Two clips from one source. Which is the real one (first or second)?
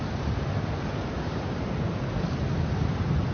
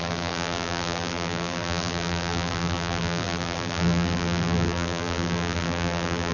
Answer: first